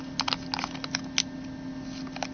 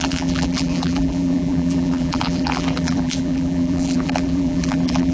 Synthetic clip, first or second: second